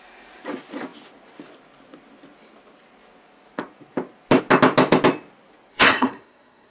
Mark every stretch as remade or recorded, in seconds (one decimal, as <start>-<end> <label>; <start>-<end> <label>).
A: 0.0-5.7 recorded; 5.7-6.7 remade

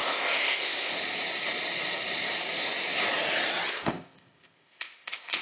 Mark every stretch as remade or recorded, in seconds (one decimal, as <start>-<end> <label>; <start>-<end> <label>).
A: 0.0-0.9 remade; 0.9-3.7 recorded; 3.7-5.4 remade

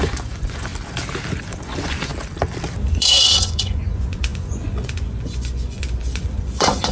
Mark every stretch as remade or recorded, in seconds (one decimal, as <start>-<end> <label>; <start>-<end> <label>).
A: 0.0-0.7 remade; 0.7-1.4 recorded; 1.4-2.1 remade; 2.1-2.9 recorded; 2.9-6.9 remade

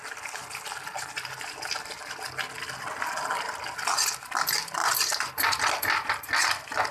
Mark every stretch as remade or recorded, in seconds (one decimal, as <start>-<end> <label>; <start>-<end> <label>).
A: 0.0-4.8 recorded; 4.8-6.4 remade; 6.4-6.9 recorded

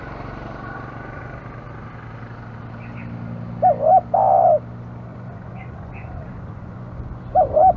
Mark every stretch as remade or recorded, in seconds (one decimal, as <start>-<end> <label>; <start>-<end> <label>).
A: 0.0-5.1 recorded; 5.1-7.2 remade; 7.2-7.8 recorded

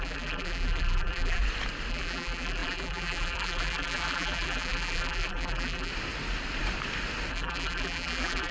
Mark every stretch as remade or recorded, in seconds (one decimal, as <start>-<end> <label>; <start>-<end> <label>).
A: 0.0-1.4 remade; 1.4-1.9 recorded; 1.9-5.9 remade; 5.9-7.3 recorded; 7.3-8.5 remade

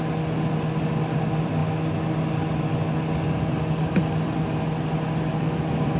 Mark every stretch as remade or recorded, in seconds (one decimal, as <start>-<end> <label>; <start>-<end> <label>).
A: 0.0-6.0 recorded

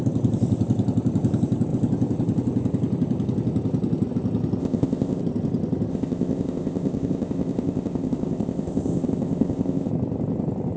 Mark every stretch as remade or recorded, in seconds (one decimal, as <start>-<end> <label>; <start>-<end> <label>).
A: 0.0-4.6 recorded; 4.6-5.2 remade; 5.2-5.9 recorded; 5.9-9.9 remade; 9.9-10.8 recorded